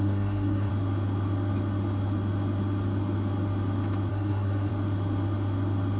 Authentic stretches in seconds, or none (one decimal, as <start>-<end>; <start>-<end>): 0.7-4.1; 4.7-6.0